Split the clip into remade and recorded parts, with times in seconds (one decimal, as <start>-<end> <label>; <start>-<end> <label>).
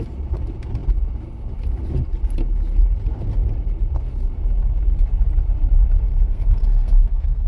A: 0.0-6.1 recorded; 6.1-7.5 remade